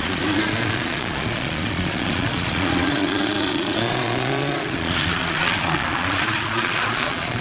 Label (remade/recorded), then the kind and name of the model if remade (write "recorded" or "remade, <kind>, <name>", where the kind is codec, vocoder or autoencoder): remade, vocoder, Vocos